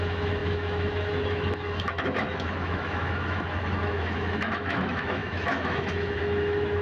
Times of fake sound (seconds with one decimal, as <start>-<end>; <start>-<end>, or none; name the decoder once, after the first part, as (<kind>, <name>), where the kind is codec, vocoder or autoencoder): 0.0-6.8 (autoencoder, DAC-VAE)